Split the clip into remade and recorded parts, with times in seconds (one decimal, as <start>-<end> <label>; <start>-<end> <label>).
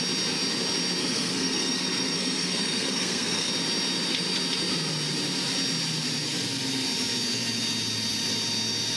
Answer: 0.0-1.0 recorded; 1.0-3.5 remade; 3.5-9.0 recorded